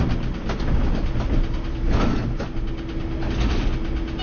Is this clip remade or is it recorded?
recorded